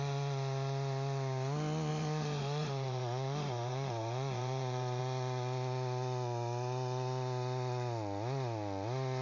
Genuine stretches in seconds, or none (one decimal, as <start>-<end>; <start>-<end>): 0.0-1.9; 5.0-9.2